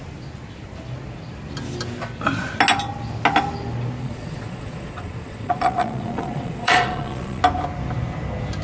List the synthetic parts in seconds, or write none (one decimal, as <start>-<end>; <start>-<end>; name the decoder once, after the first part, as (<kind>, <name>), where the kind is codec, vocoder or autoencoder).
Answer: 4.0-7.4 (vocoder, Vocos)